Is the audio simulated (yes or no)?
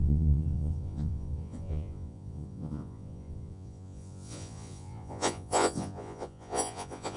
yes